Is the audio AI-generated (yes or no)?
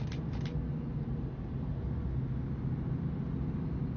no